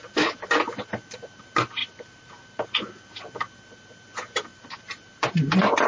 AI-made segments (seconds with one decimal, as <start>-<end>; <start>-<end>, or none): 0.0-0.5; 1.8-2.8; 4.5-5.5